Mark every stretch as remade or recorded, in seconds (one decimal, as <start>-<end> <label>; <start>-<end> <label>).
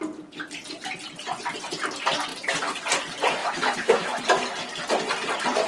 0.0-3.4 recorded; 3.4-4.2 remade; 4.2-5.7 recorded